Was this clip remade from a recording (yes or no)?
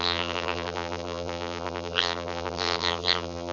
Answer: yes